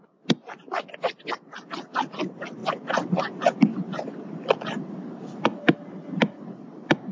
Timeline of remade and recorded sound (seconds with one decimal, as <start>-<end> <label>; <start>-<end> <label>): 0.0-7.1 recorded